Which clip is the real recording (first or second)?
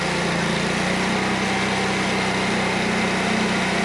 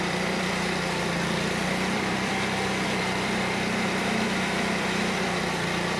first